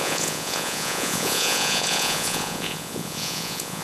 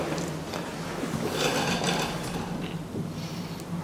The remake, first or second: first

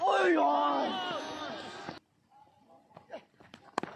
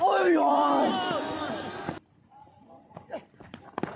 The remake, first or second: second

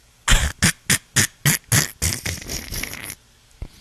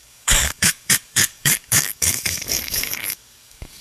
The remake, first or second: second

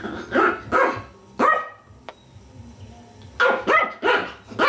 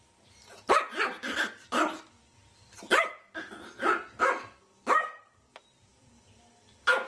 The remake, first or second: second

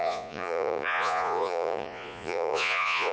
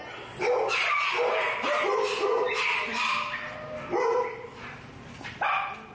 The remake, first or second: first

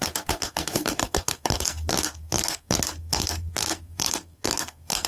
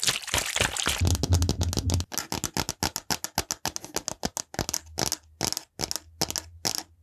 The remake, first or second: first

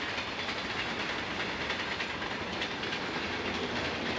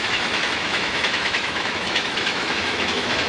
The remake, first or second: second